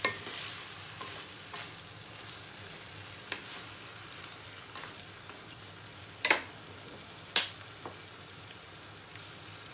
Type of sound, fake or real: real